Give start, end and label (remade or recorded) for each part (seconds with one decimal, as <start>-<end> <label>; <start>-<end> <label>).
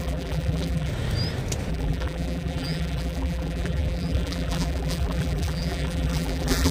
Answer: 0.0-0.9 remade; 0.9-1.7 recorded; 1.7-6.7 remade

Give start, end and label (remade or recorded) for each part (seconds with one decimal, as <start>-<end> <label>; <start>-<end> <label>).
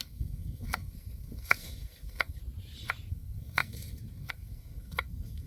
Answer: 0.0-2.4 remade; 2.4-3.1 recorded; 3.1-5.5 remade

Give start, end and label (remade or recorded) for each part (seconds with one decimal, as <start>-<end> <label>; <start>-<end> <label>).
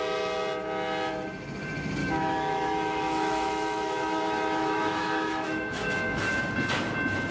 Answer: 0.0-2.0 recorded; 2.0-6.4 remade; 6.4-7.3 recorded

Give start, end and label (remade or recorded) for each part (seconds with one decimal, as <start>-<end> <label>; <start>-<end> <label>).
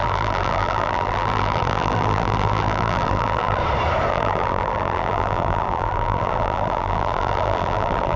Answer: 0.0-3.6 remade; 3.6-4.1 recorded; 4.1-8.2 remade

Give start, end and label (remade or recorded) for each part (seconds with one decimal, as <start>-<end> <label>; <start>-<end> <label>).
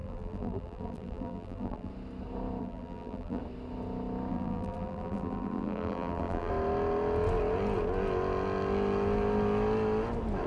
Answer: 0.0-1.9 remade; 1.9-2.6 recorded; 2.6-3.4 remade; 3.4-4.3 recorded; 4.3-6.5 remade; 6.5-10.5 recorded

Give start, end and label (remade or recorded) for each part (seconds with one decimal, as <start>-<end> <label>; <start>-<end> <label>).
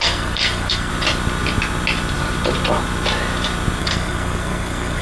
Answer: 0.0-0.9 remade; 0.9-3.8 recorded; 3.8-5.0 remade